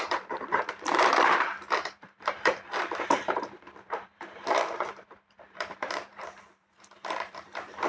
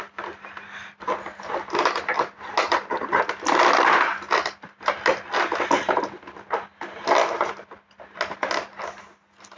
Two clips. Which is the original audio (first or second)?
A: second